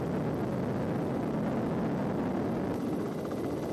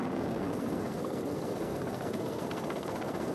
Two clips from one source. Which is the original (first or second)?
first